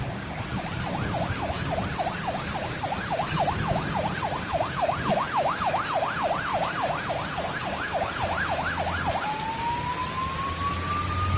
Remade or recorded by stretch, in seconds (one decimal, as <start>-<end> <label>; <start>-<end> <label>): 0.0-6.5 recorded; 6.5-7.1 remade; 7.1-11.4 recorded